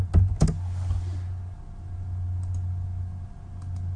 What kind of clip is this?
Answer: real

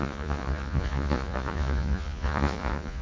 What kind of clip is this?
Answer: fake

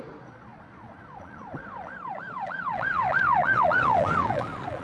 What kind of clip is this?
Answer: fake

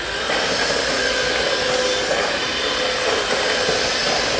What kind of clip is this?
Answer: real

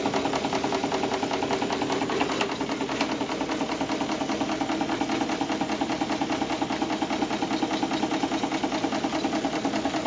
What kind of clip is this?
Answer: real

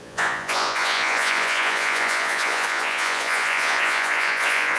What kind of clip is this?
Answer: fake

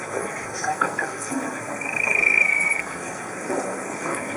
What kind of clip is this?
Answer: fake